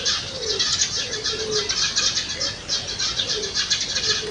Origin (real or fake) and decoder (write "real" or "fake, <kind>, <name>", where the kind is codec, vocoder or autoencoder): real